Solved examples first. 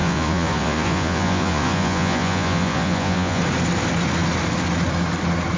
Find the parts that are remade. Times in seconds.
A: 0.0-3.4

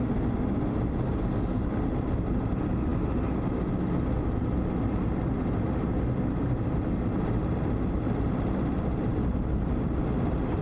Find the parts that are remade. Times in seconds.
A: none

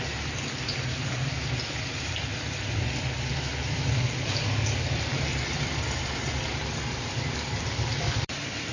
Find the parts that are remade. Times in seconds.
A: 0.0-8.7

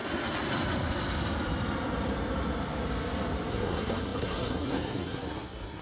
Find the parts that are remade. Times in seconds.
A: 3.5-5.8

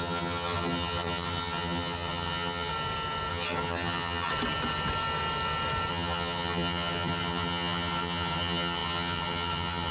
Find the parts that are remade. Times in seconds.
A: 0.0-2.7; 3.3-4.3; 5.9-9.9

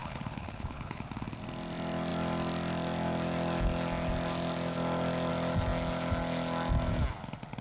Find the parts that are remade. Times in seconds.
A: 0.0-1.0